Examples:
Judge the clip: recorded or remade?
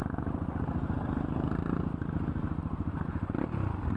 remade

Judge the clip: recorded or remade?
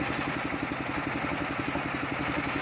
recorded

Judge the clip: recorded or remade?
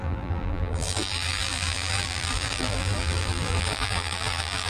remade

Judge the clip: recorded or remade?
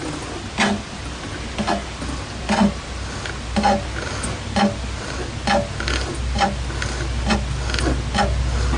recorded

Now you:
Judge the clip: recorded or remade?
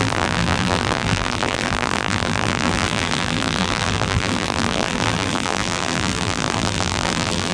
remade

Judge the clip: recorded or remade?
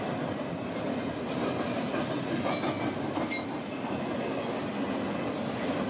recorded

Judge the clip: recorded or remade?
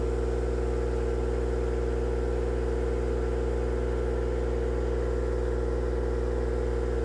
recorded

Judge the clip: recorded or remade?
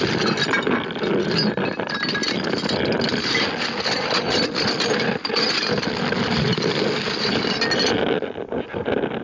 recorded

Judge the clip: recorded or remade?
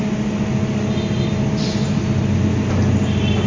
recorded